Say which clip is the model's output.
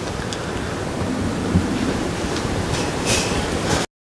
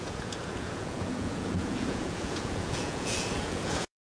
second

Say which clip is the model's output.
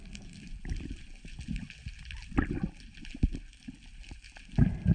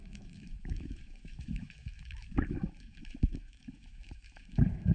second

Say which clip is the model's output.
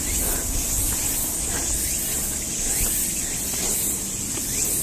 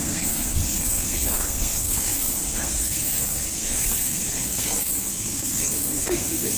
second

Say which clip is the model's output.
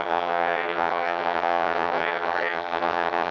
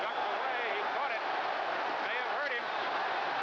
first